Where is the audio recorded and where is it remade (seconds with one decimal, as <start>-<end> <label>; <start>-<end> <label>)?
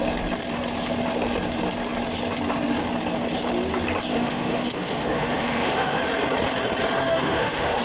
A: 0.0-4.1 recorded; 4.1-6.0 remade; 6.0-7.1 recorded; 7.1-7.8 remade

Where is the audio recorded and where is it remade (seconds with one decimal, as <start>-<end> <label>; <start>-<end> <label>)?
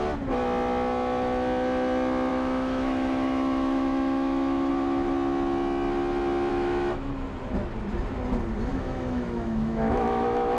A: 0.0-2.3 recorded; 2.3-4.7 remade; 4.7-6.5 recorded; 6.5-7.1 remade; 7.1-8.7 recorded; 8.7-10.6 remade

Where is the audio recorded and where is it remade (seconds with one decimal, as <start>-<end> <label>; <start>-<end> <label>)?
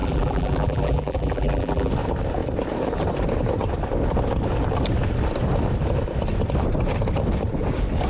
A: 0.0-1.9 remade; 1.9-8.1 recorded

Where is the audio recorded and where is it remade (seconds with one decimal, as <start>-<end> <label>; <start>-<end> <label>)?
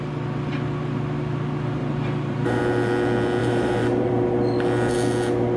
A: 0.0-1.8 recorded; 1.8-2.6 remade; 2.6-3.4 recorded; 3.4-4.1 remade; 4.1-5.6 recorded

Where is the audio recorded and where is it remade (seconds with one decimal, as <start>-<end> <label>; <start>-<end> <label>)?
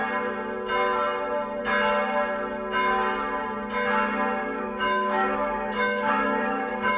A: 0.0-4.4 recorded; 4.4-7.0 remade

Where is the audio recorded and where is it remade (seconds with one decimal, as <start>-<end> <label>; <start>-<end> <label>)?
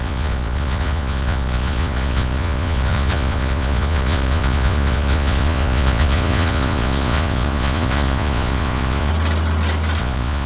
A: 0.0-9.1 remade; 9.1-10.0 recorded; 10.0-10.5 remade